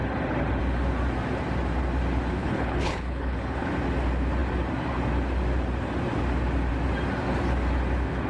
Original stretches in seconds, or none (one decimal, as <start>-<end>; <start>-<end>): 0.0-2.4; 3.7-8.3